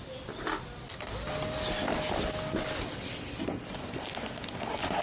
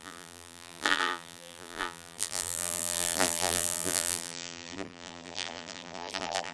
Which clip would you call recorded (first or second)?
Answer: first